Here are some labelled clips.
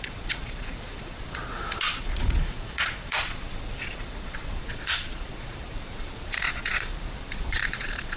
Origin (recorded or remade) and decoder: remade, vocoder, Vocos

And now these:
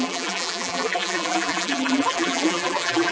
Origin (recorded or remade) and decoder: remade, vocoder, BigVGAN v2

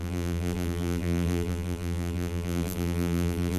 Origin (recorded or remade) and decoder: remade, vocoder, BigVGAN v2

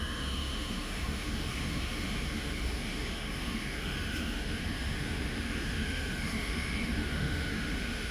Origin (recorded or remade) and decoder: remade, autoencoder, DAC-VAE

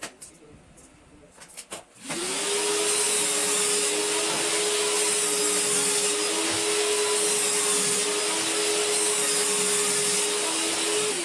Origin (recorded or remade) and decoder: recorded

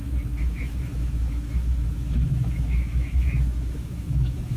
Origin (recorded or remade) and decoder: remade, autoencoder, DAC-VAE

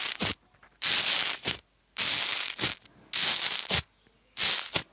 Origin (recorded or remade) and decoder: recorded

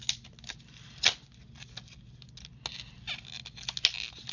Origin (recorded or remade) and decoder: recorded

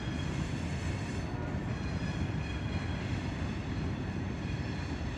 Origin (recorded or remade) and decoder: remade, vocoder, BigVGAN v2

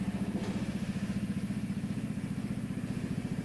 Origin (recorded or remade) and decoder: recorded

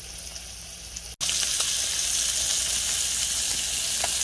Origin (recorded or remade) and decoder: recorded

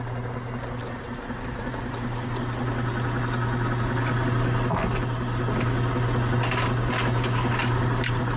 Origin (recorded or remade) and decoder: recorded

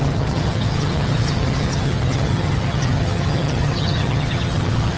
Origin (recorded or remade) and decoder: remade, vocoder, HiFi-GAN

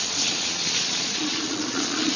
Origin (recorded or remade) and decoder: remade, vocoder, Vocos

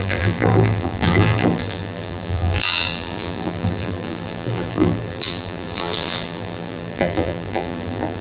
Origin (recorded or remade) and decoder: remade, vocoder, BigVGAN v2